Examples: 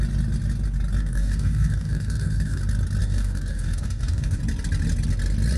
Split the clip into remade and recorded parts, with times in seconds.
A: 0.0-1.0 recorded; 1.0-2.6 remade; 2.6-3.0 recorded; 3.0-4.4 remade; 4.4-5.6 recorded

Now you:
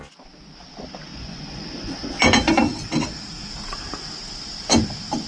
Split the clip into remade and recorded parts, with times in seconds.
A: 0.0-1.1 recorded; 1.1-2.1 remade; 2.1-5.3 recorded

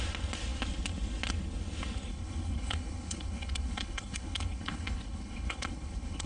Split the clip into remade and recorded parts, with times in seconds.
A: 0.0-2.1 recorded; 2.1-6.3 remade

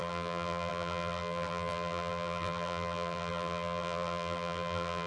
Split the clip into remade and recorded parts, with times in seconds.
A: 0.0-5.1 remade

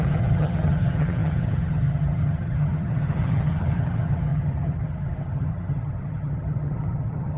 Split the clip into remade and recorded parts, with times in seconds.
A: 0.0-7.4 remade